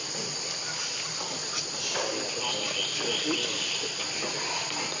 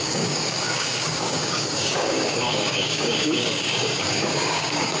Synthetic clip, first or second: second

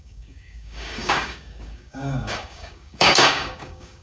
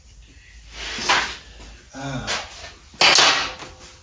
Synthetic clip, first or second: first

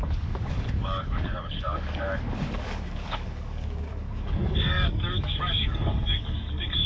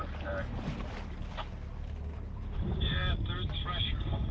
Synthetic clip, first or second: first